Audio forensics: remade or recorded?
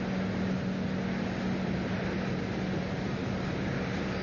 recorded